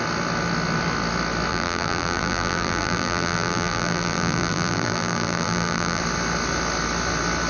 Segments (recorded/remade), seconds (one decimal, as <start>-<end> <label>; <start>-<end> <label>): 0.0-1.5 recorded; 1.5-6.0 remade; 6.0-7.5 recorded